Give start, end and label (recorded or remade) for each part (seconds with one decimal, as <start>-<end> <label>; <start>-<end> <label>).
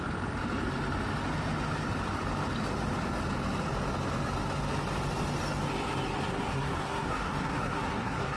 0.0-6.3 recorded; 6.3-8.4 remade